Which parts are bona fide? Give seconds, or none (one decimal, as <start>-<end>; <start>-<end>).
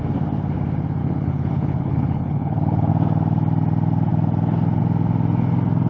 0.0-1.0; 2.9-5.9